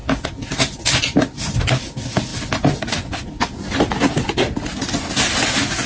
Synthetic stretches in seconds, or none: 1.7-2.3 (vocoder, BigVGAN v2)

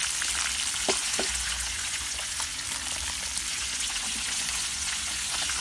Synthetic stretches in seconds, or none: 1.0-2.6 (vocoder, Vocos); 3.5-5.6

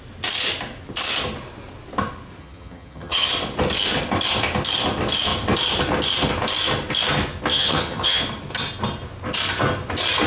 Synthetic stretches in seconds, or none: 2.4-3.3 (vocoder, HiFi-GAN); 7.5-8.2

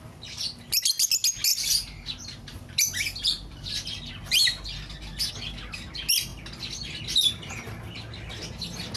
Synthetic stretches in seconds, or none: 1.5-5.3 (vocoder, BigVGAN v2)

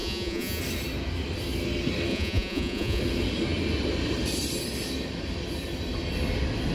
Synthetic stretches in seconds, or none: 0.0-0.6 (vocoder, Vocos); 2.1-3.0

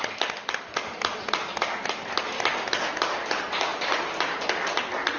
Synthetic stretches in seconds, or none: none